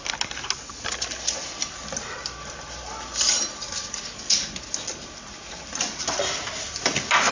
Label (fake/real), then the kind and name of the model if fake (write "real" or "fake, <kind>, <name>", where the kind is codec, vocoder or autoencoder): real